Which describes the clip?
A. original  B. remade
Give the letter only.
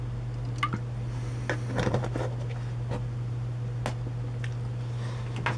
A